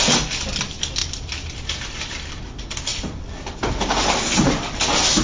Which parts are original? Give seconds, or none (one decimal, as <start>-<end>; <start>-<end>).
0.0-5.2